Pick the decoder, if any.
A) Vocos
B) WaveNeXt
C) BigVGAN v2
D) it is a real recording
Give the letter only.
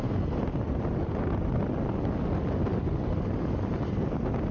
D